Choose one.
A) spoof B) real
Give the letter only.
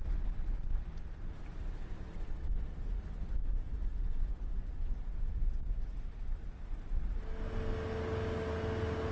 B